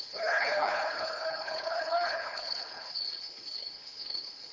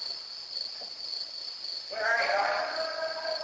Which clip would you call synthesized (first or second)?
first